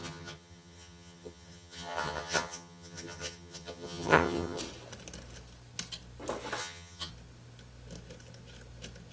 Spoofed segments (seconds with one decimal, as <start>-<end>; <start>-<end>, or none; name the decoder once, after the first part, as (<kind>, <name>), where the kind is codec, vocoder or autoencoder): 0.0-4.6 (vocoder, HiFi-GAN); 6.6-7.1